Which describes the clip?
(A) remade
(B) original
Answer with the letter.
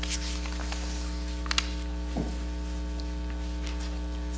B